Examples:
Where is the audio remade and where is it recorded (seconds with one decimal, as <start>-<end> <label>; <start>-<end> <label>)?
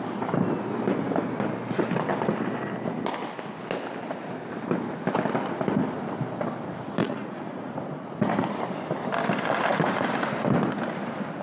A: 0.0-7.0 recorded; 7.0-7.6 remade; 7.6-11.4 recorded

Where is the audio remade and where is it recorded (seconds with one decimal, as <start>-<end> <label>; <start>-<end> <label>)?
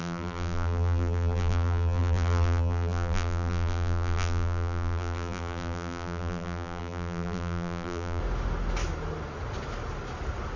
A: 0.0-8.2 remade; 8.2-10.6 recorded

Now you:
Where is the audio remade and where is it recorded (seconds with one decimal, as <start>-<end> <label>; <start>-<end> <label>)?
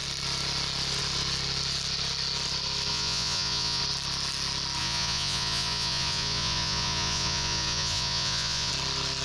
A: 0.0-2.9 recorded; 2.9-3.8 remade; 3.8-4.8 recorded; 4.8-8.7 remade; 8.7-9.2 recorded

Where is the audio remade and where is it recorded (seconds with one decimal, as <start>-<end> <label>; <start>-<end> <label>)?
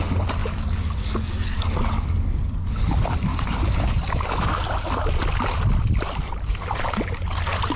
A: 0.0-0.4 recorded; 0.4-2.9 remade; 2.9-3.3 recorded; 3.3-4.5 remade; 4.5-7.8 recorded